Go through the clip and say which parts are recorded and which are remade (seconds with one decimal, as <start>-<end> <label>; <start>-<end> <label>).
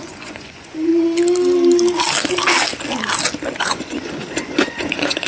0.0-0.9 remade; 0.9-3.6 recorded; 3.6-5.3 remade